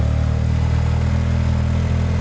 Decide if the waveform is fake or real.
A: real